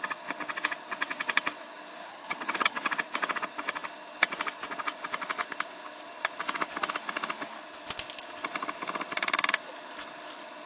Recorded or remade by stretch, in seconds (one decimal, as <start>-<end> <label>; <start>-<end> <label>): 0.0-2.1 recorded; 2.1-2.9 remade; 2.9-10.7 recorded